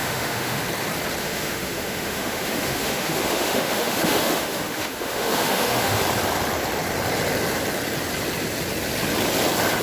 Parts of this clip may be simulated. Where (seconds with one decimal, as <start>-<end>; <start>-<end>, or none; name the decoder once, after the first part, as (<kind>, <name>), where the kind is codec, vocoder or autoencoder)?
0.0-0.6 (autoencoder, DAC-VAE); 1.2-6.0